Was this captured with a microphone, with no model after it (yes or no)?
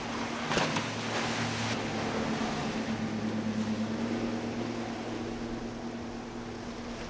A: yes